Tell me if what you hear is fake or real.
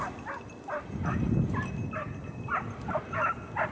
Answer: real